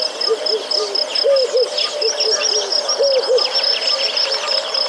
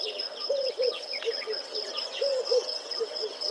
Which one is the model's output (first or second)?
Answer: second